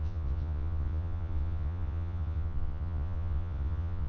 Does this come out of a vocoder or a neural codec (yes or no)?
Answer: yes